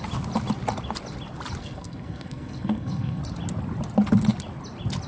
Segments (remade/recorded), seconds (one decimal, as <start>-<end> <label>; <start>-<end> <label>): 0.0-1.6 recorded; 1.6-3.2 remade; 3.2-5.1 recorded

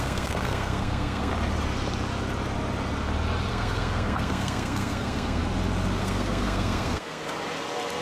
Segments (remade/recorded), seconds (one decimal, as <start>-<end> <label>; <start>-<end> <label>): 0.0-1.3 remade; 1.3-3.5 recorded; 3.5-5.4 remade; 5.4-6.0 recorded; 6.0-7.2 remade; 7.2-8.0 recorded